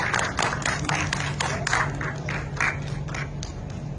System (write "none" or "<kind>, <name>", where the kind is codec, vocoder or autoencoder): none